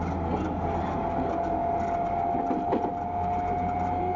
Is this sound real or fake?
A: real